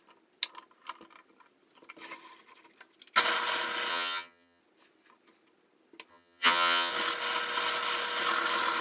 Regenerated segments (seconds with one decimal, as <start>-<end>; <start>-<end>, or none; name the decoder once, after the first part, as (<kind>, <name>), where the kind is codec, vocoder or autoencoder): 3.9-4.6 (vocoder, HiFi-GAN); 6.1-6.9